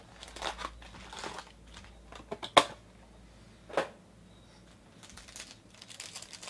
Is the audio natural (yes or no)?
yes